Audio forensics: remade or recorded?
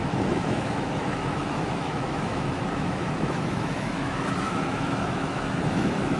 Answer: remade